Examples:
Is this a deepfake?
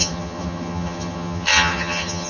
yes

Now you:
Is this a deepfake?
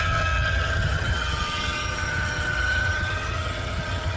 yes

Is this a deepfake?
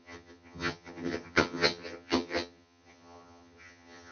yes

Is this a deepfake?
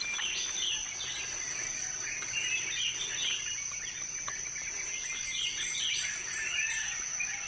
no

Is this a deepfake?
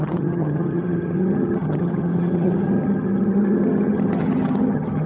yes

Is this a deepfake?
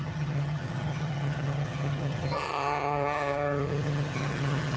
yes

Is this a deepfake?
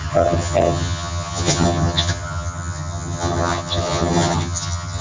yes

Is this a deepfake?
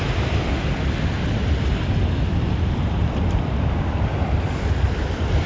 no